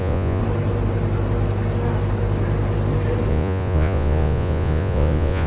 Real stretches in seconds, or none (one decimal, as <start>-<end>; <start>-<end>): 0.4-3.3